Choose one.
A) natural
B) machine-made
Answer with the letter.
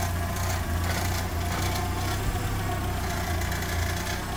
A